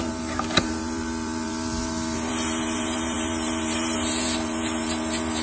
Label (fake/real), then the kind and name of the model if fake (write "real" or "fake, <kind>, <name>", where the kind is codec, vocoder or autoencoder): fake, vocoder, BigVGAN v2